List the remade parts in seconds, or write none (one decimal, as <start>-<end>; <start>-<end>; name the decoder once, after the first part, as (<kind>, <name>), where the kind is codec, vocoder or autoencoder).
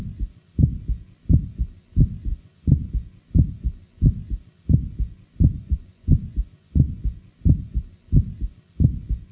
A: 2.3-2.9 (vocoder, Vocos); 5.5-7.0